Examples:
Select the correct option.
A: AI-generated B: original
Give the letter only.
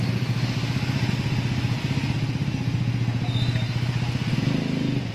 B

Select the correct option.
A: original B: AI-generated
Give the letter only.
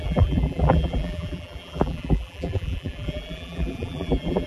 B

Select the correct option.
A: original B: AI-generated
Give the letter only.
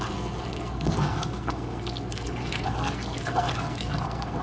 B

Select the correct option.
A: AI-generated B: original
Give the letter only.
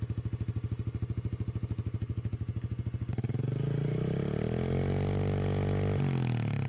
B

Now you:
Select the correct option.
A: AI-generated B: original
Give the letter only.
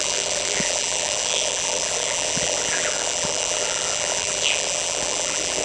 A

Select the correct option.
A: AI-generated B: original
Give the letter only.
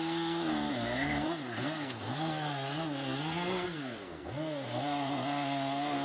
A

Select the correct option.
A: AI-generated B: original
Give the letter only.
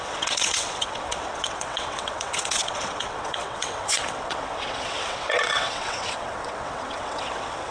A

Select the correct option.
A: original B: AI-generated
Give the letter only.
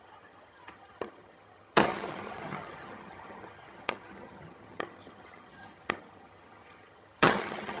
B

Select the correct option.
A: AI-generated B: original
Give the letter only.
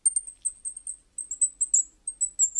B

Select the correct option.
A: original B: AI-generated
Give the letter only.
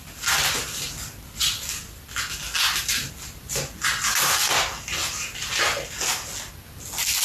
A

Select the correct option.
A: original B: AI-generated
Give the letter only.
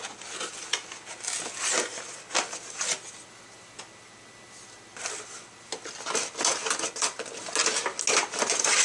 A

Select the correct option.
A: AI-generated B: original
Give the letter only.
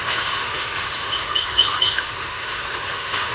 A